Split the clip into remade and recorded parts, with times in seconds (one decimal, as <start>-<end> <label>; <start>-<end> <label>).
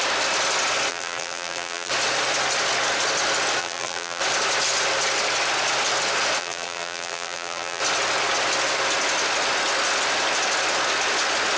0.0-0.9 recorded; 0.9-1.9 remade; 1.9-3.6 recorded; 3.6-4.2 remade; 4.2-6.4 recorded; 6.4-7.8 remade; 7.8-11.6 recorded